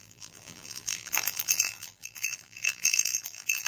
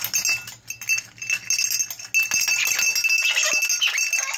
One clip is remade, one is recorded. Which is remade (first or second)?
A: first